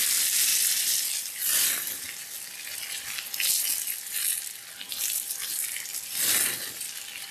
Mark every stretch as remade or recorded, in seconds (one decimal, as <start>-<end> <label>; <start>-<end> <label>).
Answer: 0.0-0.5 remade; 0.5-4.9 recorded; 4.9-7.3 remade